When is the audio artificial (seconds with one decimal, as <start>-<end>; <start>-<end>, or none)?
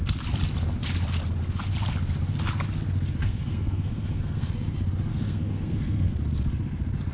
3.2-4.5; 5.1-6.1